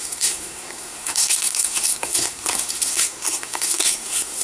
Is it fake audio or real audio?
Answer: fake